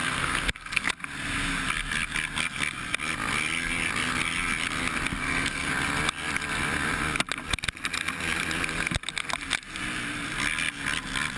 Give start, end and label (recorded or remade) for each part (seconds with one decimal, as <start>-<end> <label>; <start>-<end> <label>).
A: 0.0-0.9 remade; 0.9-5.2 recorded; 5.2-5.7 remade; 5.7-11.4 recorded